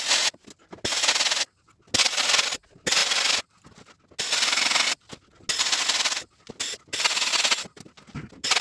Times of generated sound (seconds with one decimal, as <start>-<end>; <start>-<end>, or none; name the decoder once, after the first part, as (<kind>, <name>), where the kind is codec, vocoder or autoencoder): none